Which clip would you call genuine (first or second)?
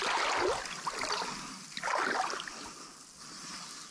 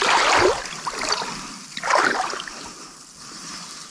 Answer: first